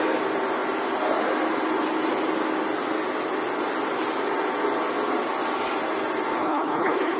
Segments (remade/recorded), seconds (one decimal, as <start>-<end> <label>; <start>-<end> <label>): 0.0-6.4 recorded; 6.4-7.2 remade